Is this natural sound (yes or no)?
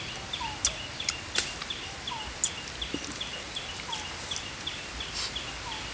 yes